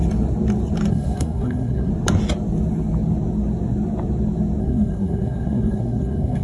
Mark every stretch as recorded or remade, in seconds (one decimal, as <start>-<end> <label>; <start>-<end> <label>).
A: 0.0-0.9 recorded; 0.9-1.9 remade; 1.9-4.6 recorded; 4.6-6.4 remade